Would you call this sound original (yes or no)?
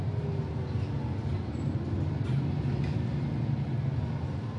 yes